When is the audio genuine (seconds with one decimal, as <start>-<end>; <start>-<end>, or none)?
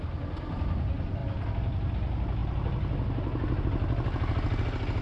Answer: 0.0-5.0